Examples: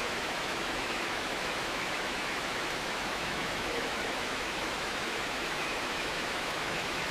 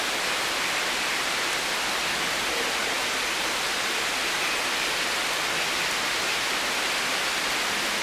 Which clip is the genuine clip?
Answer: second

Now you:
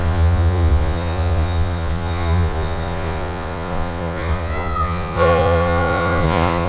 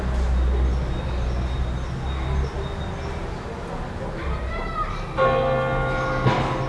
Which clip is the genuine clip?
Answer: second